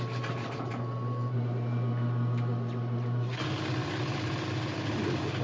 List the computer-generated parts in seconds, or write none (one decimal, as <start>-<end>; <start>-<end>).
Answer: 3.8-5.4